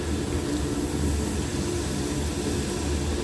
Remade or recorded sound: recorded